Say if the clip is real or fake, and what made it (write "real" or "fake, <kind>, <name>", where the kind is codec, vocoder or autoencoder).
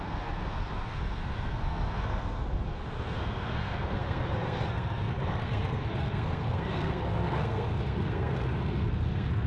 fake, codec, SNAC